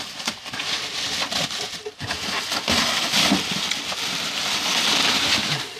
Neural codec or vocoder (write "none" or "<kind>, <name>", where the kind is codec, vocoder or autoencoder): none